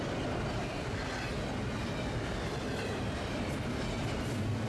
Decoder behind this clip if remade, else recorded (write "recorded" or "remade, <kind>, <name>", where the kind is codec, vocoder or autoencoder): recorded